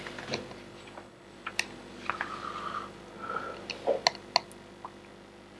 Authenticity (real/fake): real